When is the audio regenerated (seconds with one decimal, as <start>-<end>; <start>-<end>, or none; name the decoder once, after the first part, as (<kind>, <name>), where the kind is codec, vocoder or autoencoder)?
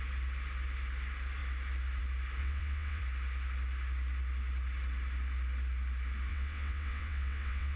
2.4-3.0 (vocoder, WaveNeXt); 6.3-7.8